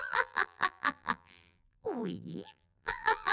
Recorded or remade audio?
remade